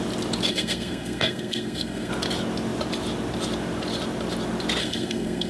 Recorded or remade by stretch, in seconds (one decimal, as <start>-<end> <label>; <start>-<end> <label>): 0.0-0.5 recorded; 0.5-2.1 remade; 2.1-4.8 recorded; 4.8-5.5 remade